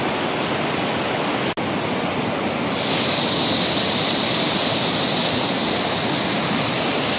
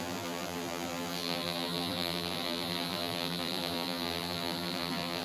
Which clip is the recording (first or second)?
first